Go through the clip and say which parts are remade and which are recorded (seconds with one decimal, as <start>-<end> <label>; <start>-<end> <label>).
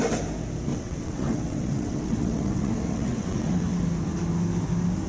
0.0-0.7 recorded; 0.7-3.8 remade; 3.8-5.1 recorded